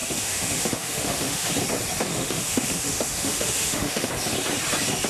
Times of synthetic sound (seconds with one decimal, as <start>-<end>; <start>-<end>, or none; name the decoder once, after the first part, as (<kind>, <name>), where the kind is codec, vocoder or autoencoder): 0.0-1.5 (autoencoder, DAC-VAE); 2.1-4.1